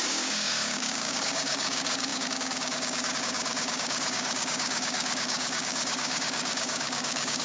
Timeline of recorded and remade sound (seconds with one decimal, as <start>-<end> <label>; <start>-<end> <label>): 0.0-7.4 remade

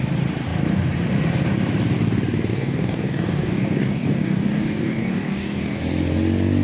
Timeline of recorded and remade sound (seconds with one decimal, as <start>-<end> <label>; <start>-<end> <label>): 0.0-2.5 recorded; 2.5-5.8 remade; 5.8-6.6 recorded

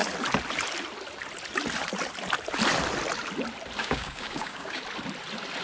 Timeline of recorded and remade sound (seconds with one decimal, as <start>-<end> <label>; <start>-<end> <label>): 0.0-3.8 recorded; 3.8-4.8 remade; 4.8-5.6 recorded

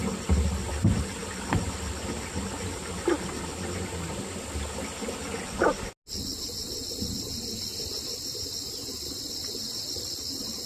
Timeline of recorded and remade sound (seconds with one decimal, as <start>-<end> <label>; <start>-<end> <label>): 0.0-10.7 recorded

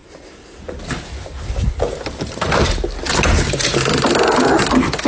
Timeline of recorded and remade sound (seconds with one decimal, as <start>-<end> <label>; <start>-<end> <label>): 0.0-5.1 recorded

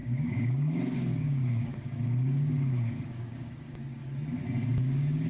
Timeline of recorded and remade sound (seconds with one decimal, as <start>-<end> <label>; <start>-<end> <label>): 0.0-4.0 remade; 4.0-4.7 recorded; 4.7-5.3 remade